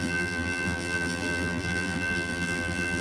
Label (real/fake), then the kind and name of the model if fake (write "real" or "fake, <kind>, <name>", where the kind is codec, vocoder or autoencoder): fake, vocoder, BigVGAN v2